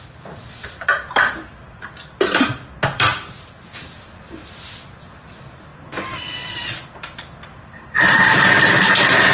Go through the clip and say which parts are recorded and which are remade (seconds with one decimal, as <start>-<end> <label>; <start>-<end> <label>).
0.0-9.3 remade